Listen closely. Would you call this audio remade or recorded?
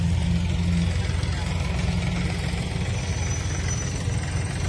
recorded